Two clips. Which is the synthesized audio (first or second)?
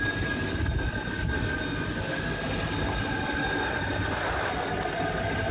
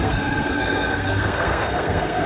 second